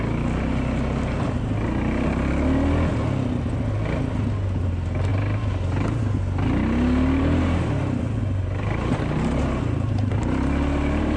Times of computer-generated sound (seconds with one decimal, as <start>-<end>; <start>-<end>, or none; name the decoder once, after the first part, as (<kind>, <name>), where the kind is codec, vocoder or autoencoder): 5.1-6.0 (vocoder, BigVGAN v2); 7.2-7.8; 8.2-11.2